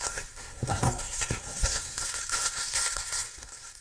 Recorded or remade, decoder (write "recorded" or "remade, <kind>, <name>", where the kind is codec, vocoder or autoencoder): remade, codec, SNAC